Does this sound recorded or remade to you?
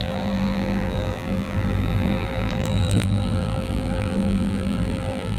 remade